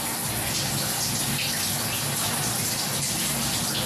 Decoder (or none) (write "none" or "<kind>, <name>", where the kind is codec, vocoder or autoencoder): none